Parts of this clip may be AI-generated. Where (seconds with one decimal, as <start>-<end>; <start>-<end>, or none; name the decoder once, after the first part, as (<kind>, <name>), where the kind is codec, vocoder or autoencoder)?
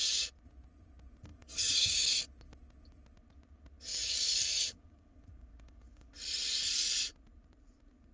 1.3-2.2 (codec, DAC); 4.0-6.1